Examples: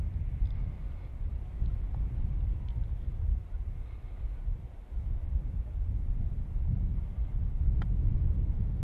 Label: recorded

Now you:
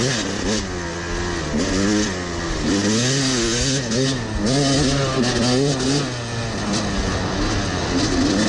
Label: recorded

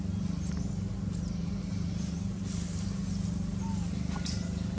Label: recorded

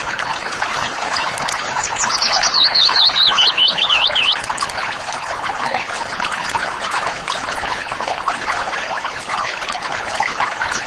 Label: remade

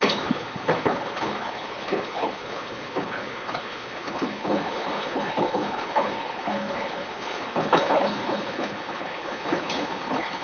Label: remade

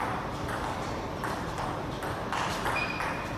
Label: recorded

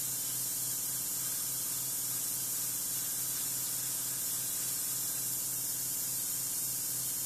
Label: recorded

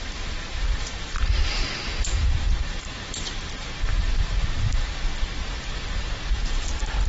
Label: remade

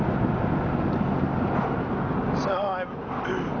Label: recorded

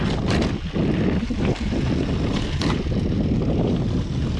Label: recorded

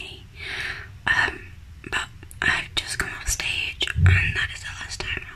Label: recorded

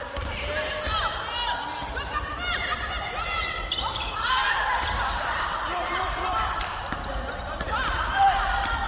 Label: remade